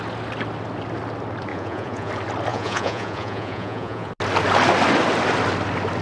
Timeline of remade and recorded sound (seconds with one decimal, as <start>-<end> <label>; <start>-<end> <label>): 0.0-1.5 recorded; 1.5-2.1 remade; 2.1-2.5 recorded; 2.5-4.1 remade; 4.1-6.0 recorded